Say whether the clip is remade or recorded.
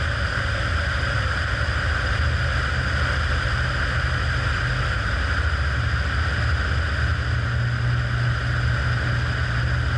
recorded